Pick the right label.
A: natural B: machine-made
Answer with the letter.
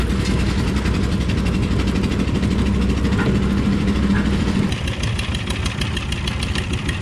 A